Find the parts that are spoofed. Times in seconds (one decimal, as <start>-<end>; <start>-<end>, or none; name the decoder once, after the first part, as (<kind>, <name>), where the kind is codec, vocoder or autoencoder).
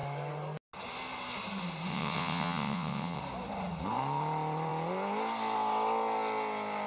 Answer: 1.9-3.2 (vocoder, WaveNeXt)